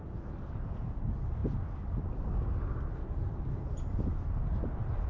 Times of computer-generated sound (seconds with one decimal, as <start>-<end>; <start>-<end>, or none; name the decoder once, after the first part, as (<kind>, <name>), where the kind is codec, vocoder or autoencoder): none